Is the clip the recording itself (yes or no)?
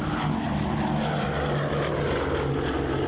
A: yes